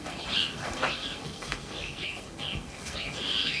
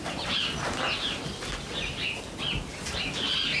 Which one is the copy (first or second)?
first